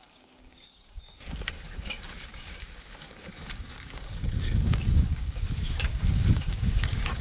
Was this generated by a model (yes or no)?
yes